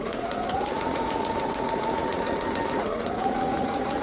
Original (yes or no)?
no